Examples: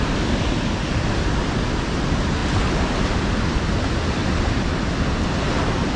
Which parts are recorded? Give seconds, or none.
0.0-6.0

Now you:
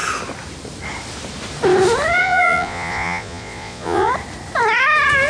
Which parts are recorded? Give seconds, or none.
0.0-2.2; 4.1-5.3

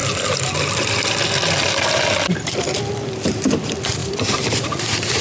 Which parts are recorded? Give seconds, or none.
0.0-4.0